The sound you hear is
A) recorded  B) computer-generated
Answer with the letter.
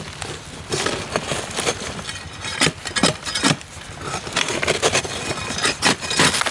A